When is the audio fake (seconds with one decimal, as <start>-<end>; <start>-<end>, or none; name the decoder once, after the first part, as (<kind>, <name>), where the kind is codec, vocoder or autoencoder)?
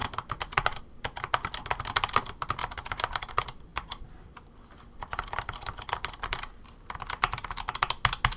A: 2.6-3.3 (vocoder, BigVGAN v2); 3.7-7.0